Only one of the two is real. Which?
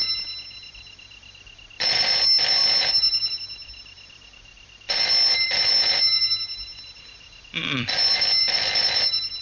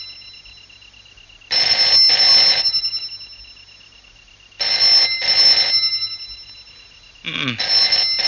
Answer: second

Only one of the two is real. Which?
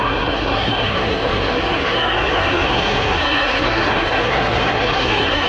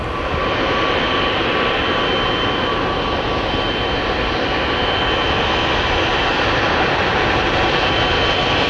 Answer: second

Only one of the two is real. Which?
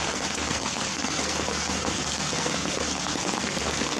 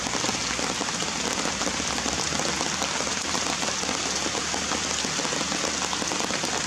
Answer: second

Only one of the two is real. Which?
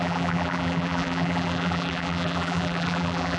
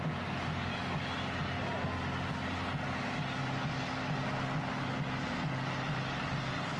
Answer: second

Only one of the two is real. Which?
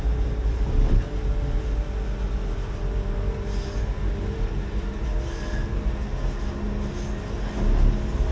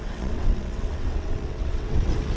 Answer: first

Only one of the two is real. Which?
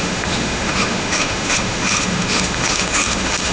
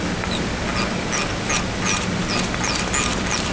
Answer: second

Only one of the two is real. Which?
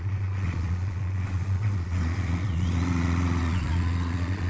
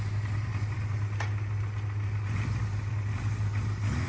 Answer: second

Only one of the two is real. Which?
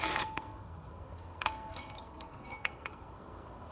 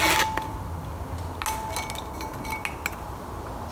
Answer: second